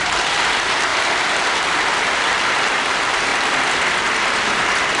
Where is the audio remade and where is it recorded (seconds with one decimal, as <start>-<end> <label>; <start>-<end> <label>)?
0.0-5.0 recorded